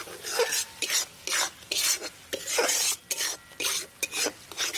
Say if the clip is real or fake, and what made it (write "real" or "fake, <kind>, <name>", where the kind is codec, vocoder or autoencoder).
real